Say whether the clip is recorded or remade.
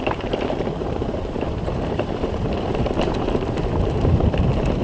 remade